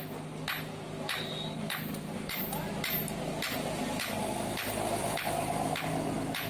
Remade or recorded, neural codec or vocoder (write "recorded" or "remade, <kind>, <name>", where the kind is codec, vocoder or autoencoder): recorded